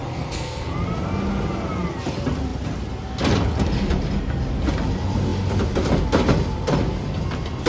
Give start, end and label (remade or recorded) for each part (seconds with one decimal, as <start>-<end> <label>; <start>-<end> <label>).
0.0-0.7 remade; 0.7-7.7 recorded